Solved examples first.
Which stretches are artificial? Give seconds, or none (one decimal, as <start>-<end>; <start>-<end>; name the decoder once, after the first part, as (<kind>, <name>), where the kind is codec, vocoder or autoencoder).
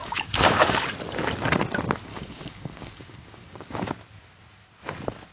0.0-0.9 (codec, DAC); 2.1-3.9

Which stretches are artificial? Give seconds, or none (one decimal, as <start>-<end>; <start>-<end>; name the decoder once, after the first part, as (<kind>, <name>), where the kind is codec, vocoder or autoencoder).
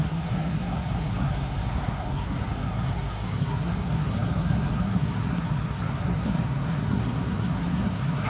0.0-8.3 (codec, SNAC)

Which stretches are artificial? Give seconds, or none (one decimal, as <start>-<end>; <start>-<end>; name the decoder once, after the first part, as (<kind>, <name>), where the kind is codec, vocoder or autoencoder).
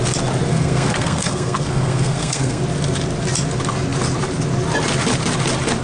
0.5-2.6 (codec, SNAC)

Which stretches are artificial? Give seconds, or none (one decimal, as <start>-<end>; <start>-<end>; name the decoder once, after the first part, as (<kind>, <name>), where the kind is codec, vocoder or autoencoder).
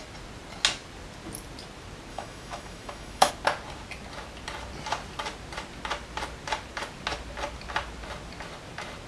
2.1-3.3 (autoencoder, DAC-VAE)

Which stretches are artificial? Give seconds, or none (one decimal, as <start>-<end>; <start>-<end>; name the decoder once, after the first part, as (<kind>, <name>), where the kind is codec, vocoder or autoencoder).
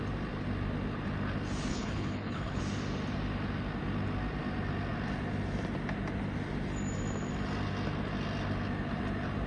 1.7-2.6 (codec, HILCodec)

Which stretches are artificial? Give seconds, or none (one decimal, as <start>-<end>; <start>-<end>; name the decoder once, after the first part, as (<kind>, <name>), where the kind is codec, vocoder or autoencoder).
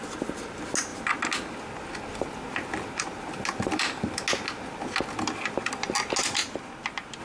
none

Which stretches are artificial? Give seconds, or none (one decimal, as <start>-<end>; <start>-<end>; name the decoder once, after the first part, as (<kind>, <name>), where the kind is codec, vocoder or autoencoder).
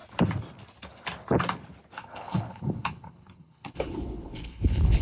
2.0-5.0 (codec, HILCodec)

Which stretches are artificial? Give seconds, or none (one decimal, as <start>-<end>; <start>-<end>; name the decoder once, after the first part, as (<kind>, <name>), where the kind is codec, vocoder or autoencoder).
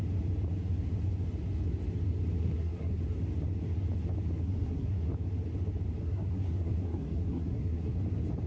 2.4-3.0 (codec, SNAC); 4.4-5.1; 6.0-8.0